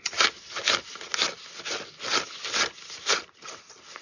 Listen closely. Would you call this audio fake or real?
real